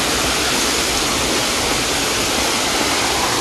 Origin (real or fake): real